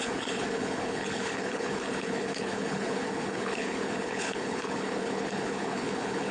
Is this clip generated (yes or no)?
yes